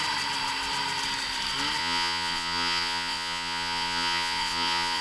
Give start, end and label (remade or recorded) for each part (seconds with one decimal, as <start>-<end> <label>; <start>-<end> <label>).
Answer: 0.0-1.8 recorded; 1.8-5.0 remade